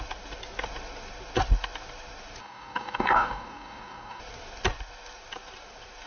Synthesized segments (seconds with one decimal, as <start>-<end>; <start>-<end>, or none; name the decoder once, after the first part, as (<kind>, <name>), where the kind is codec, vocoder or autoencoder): 2.4-4.2 (codec, DAC)